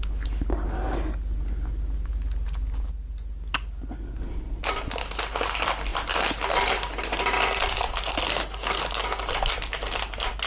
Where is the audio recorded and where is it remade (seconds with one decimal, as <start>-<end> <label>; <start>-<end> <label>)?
0.0-10.5 recorded